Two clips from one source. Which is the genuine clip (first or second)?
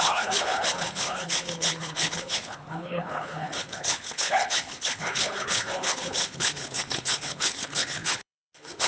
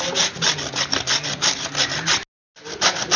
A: second